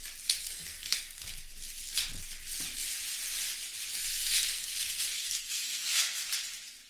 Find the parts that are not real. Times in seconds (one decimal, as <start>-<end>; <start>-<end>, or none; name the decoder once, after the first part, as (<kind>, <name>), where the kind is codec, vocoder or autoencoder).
0.4-1.5 (codec, SNAC); 3.9-6.2